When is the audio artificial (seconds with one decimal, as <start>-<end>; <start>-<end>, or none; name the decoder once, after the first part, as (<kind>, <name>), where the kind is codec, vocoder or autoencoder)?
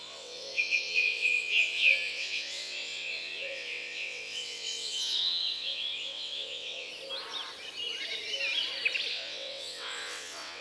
0.0-6.9 (vocoder, WaveNeXt); 9.1-10.6